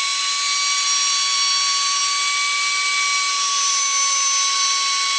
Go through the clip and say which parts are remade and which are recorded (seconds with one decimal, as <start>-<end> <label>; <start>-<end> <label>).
0.0-5.2 recorded